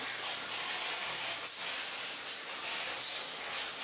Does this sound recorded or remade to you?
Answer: recorded